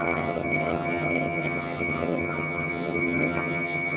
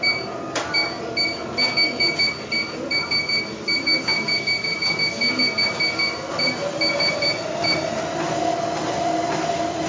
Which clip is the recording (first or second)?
second